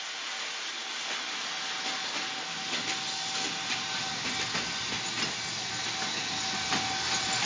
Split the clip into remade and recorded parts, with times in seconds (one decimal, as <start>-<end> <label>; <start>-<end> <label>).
0.0-7.5 recorded